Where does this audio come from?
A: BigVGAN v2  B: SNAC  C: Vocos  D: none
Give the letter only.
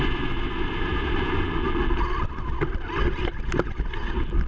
D